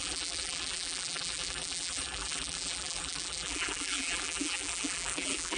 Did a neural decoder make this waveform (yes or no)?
yes